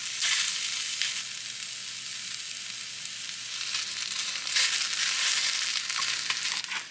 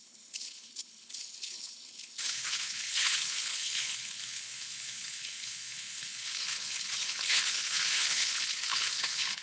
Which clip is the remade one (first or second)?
second